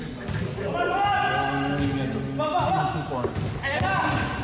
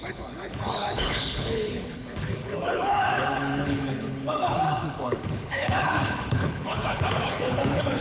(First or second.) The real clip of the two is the first